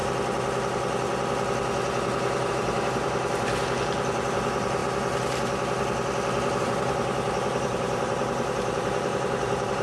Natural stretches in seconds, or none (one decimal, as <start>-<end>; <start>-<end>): 0.0-2.5; 4.8-6.6